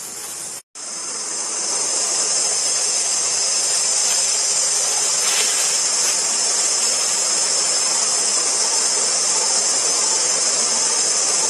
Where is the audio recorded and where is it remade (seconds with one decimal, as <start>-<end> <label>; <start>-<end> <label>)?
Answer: 0.0-11.5 recorded

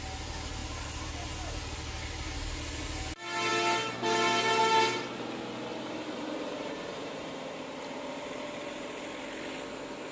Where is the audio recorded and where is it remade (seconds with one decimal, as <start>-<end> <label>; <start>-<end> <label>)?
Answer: 0.0-5.7 recorded; 5.7-9.1 remade; 9.1-10.1 recorded